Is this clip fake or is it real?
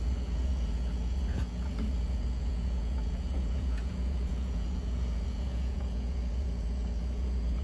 fake